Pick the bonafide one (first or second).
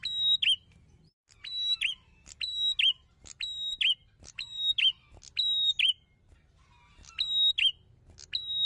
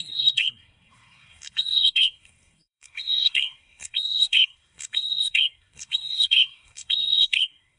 first